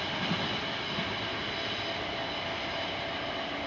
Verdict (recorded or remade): recorded